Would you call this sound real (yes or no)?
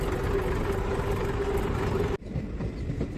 yes